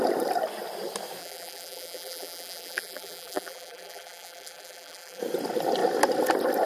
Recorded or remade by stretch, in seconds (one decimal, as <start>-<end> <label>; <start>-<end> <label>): 0.0-1.2 recorded; 1.2-5.2 remade; 5.2-6.7 recorded